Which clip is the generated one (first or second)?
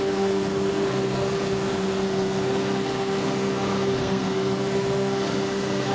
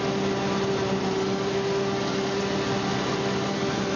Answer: first